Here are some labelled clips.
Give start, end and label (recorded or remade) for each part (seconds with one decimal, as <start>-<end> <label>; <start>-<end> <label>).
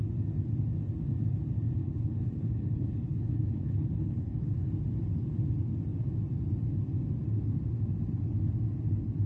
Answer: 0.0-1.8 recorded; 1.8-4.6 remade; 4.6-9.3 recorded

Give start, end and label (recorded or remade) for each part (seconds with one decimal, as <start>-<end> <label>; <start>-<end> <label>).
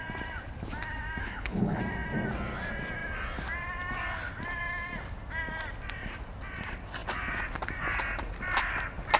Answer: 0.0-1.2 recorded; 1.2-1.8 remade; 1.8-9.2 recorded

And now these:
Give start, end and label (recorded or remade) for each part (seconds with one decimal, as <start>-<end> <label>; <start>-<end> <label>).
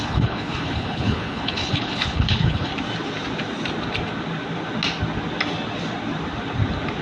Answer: 0.0-2.7 remade; 2.7-7.0 recorded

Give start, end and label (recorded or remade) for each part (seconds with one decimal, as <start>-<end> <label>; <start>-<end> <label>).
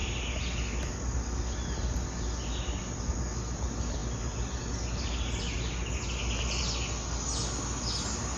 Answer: 0.0-8.4 recorded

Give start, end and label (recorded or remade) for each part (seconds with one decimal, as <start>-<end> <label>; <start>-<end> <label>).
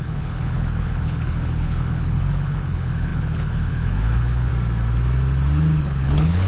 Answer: 0.0-4.5 remade; 4.5-5.8 recorded; 5.8-6.5 remade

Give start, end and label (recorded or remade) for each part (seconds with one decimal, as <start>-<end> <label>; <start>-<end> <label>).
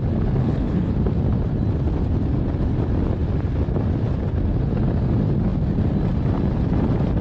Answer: 0.0-0.4 recorded; 0.4-0.9 remade; 0.9-7.2 recorded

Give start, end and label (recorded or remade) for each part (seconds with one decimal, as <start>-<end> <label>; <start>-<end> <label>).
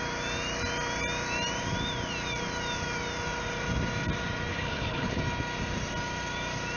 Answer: 0.0-4.5 recorded; 4.5-5.2 remade; 5.2-6.8 recorded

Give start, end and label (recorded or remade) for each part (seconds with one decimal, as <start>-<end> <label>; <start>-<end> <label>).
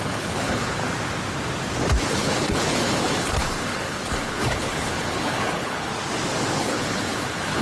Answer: 0.0-0.8 remade; 0.8-2.1 recorded; 2.1-5.9 remade; 5.9-6.6 recorded; 6.6-7.6 remade